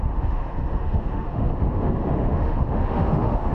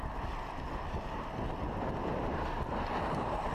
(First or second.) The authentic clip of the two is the second